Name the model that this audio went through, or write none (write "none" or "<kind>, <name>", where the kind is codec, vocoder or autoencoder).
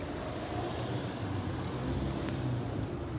none